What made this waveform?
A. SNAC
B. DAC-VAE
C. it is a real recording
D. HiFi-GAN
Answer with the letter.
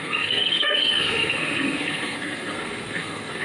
A